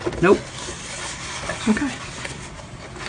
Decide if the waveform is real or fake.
real